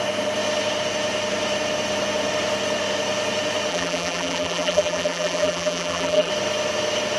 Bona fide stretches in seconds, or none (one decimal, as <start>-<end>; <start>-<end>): 0.0-3.7; 6.3-7.2